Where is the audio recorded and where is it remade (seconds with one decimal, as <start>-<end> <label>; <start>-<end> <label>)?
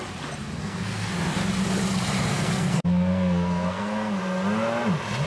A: 0.0-0.6 recorded; 0.6-1.1 remade; 1.1-2.3 recorded; 2.3-4.2 remade; 4.2-5.3 recorded